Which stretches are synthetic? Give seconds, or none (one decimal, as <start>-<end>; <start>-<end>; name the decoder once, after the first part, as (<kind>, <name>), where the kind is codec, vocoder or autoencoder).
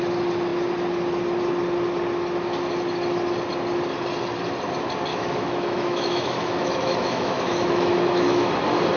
5.1-8.5 (autoencoder, DAC-VAE)